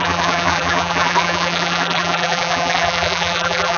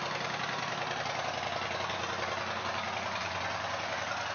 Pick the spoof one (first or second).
first